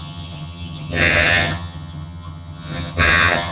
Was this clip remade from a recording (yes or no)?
yes